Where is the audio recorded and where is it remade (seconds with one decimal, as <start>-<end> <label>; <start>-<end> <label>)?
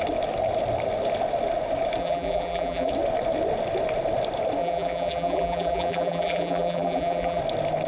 0.0-2.0 recorded; 2.0-2.9 remade; 2.9-4.6 recorded; 4.6-7.4 remade; 7.4-7.9 recorded